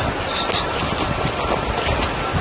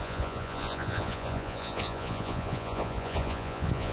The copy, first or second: second